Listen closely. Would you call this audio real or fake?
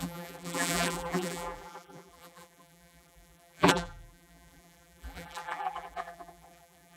fake